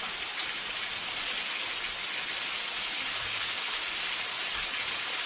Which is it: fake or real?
real